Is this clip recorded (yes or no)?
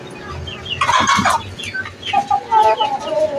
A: yes